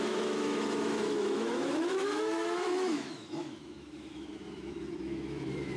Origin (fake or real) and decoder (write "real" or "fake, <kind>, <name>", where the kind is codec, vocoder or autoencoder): fake, autoencoder, DAC-VAE